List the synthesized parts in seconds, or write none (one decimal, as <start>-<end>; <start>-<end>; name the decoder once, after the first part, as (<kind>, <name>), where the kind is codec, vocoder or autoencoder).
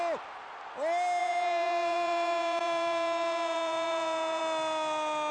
1.2-4.4 (vocoder, Vocos)